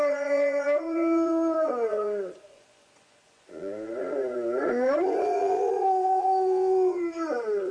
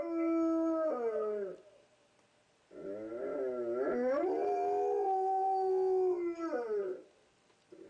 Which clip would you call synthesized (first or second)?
first